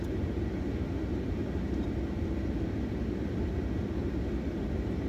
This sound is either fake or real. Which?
real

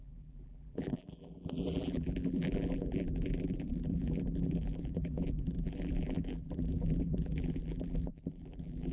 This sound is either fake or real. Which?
fake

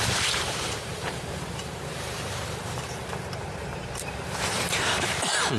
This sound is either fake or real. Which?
fake